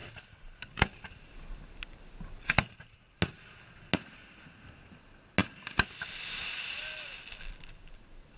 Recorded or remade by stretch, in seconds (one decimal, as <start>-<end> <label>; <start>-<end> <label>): 0.0-8.4 recorded